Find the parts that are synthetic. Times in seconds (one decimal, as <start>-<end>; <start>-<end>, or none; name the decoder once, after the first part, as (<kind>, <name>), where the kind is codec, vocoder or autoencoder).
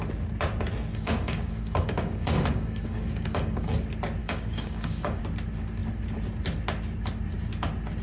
0.9-3.8 (codec, DAC); 4.2-5.2